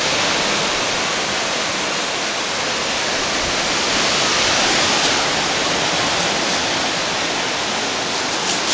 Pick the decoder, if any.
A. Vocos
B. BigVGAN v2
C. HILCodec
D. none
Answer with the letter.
D